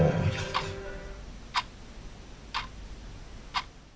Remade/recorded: recorded